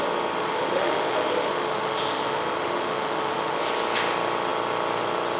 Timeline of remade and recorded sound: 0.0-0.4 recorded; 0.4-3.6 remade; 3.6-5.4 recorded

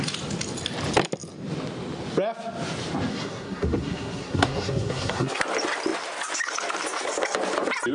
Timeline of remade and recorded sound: 0.0-3.1 recorded; 3.1-5.4 remade; 5.4-7.9 recorded

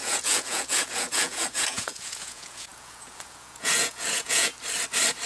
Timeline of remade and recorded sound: 0.0-4.5 remade; 4.5-5.3 recorded

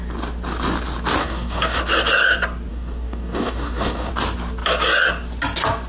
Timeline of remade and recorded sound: 0.0-1.2 recorded; 1.2-1.8 remade; 1.8-2.7 recorded; 2.7-4.1 remade; 4.1-5.9 recorded

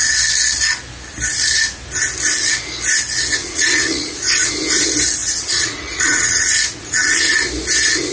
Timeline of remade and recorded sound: 0.0-3.4 recorded; 3.4-4.5 remade; 4.5-5.2 recorded; 5.2-7.3 remade; 7.3-8.1 recorded

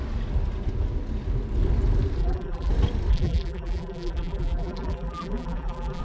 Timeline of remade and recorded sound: 0.0-2.2 recorded; 2.2-2.7 remade; 2.7-3.1 recorded; 3.1-6.0 remade